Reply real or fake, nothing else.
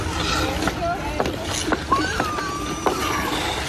real